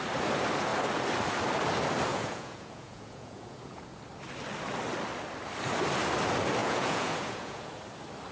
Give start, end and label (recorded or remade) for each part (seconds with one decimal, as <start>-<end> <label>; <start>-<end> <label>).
0.0-2.1 recorded; 2.1-4.0 remade; 4.0-6.6 recorded; 6.6-7.7 remade; 7.7-8.3 recorded

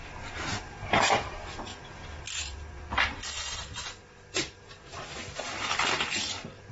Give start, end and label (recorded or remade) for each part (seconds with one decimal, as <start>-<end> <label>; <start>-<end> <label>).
0.0-0.6 recorded; 0.6-3.2 remade; 3.2-4.5 recorded; 4.5-6.7 remade

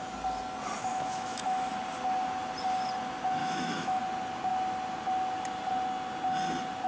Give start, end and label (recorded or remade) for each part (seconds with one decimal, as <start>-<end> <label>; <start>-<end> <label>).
0.0-0.9 recorded; 0.9-1.7 remade; 1.7-3.4 recorded; 3.4-4.0 remade; 4.0-6.9 recorded